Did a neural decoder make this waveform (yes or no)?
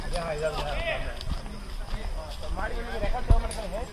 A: no